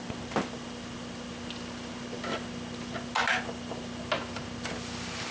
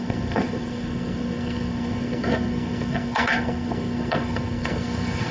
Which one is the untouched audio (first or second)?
first